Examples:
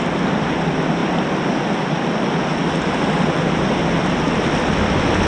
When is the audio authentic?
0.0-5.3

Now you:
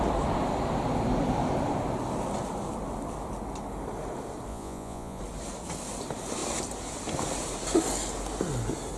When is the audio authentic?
0.0-4.5; 5.2-9.0

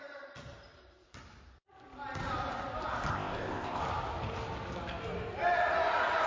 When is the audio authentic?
0.0-3.1; 3.8-6.3

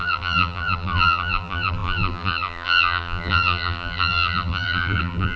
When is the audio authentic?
none

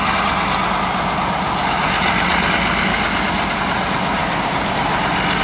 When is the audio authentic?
0.0-2.9; 3.6-4.2; 5.0-5.4